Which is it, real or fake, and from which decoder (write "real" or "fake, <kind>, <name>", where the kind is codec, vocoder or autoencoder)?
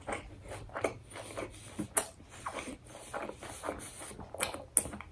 real